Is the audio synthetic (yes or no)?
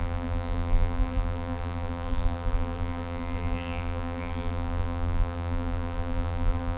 yes